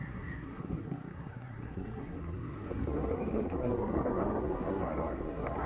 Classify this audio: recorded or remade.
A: remade